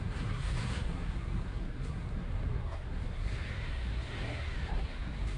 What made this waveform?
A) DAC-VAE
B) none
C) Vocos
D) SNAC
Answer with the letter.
D